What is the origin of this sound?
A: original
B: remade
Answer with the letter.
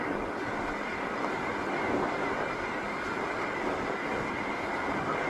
A